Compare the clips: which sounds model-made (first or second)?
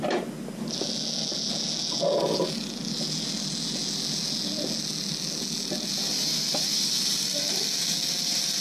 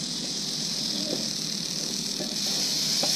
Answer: second